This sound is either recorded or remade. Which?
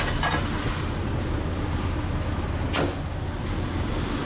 recorded